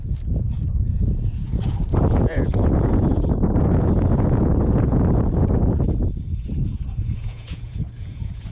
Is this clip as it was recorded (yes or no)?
no